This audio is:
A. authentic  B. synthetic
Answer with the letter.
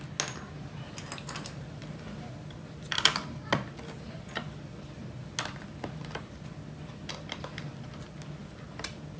A